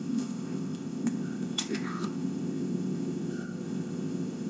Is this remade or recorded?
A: remade